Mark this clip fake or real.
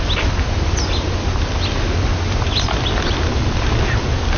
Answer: real